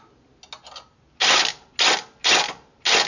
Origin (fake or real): real